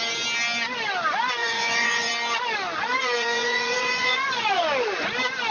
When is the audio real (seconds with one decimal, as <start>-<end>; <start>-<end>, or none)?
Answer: 0.0-1.4; 2.1-2.9; 4.6-5.5